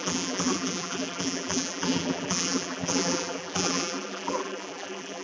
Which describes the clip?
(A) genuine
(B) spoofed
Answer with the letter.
B